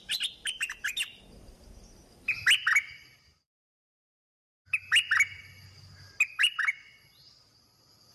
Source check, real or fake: real